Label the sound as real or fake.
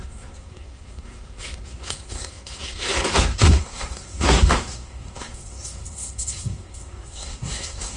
fake